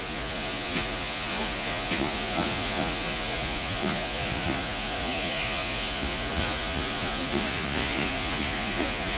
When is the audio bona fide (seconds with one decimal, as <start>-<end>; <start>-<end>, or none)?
none